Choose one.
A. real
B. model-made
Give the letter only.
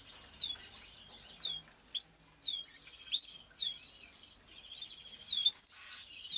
A